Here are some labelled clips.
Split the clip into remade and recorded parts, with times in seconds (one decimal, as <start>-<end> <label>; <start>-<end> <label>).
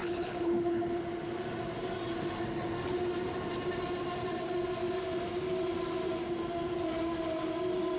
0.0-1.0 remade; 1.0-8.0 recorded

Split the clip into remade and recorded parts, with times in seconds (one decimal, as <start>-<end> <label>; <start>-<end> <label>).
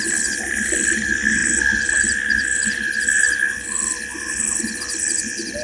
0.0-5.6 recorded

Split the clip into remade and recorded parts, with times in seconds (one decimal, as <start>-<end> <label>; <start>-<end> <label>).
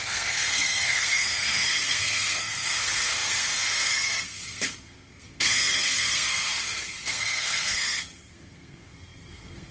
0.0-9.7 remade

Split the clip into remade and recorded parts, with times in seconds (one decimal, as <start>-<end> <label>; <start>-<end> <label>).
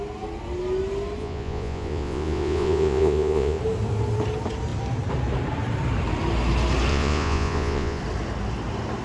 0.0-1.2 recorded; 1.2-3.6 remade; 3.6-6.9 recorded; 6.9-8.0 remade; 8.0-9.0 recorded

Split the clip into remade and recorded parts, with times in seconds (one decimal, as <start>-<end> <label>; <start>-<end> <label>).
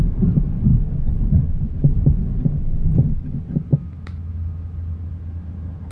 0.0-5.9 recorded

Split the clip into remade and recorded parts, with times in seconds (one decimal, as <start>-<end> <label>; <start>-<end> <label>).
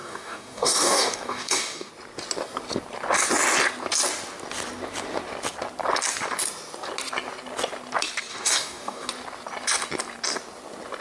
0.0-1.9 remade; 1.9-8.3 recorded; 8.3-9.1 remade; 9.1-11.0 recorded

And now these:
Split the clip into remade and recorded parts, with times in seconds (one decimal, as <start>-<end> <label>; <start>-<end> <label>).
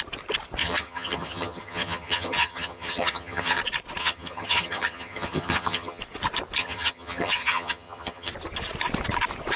0.0-0.6 recorded; 0.6-3.6 remade; 3.6-4.0 recorded; 4.0-6.0 remade; 6.0-6.6 recorded; 6.6-8.3 remade; 8.3-9.6 recorded